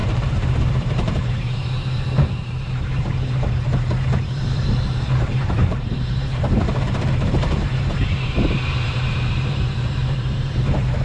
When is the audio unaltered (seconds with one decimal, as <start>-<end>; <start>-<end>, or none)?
none